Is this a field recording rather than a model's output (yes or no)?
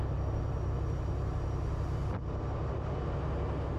yes